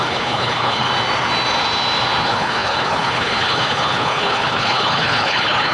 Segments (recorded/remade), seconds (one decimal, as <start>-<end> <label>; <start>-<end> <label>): 0.0-0.9 remade; 0.9-2.2 recorded; 2.2-5.7 remade